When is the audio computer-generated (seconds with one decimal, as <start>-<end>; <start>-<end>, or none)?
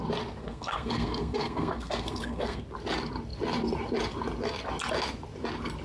0.4-2.6